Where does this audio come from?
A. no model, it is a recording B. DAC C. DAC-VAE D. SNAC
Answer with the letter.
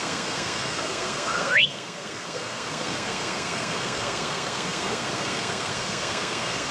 D